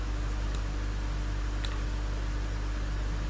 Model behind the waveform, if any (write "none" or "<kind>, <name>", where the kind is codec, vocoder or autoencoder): none